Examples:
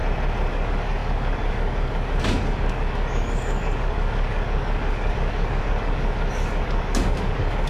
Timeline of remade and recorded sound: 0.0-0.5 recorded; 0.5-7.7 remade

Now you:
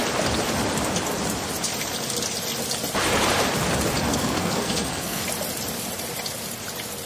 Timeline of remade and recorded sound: 0.0-4.1 recorded; 4.1-5.2 remade; 5.2-7.1 recorded